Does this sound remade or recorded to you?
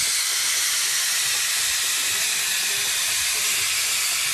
recorded